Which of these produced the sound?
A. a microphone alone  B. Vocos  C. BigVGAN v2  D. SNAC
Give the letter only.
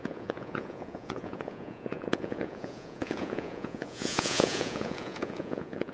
B